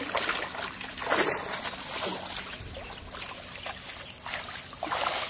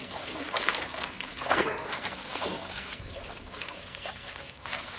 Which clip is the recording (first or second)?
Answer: first